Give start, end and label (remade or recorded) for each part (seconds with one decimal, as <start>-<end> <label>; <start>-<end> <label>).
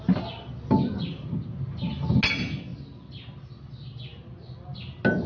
0.0-5.3 recorded